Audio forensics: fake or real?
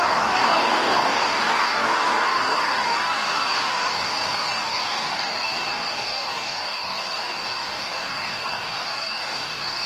fake